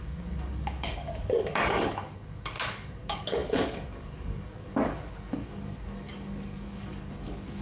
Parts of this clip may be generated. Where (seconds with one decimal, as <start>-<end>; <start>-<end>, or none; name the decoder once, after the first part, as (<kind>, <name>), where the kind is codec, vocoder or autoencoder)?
0.0-7.6 (codec, DAC)